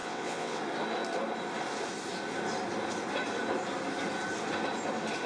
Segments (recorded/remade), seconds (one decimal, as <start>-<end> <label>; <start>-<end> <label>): 0.0-0.6 remade; 0.6-5.3 recorded